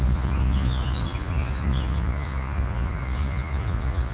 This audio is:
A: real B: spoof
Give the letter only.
B